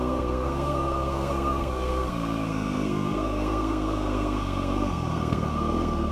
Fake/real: fake